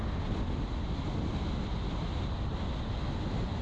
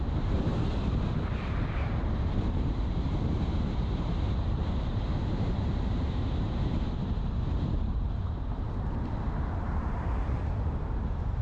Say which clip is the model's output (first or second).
second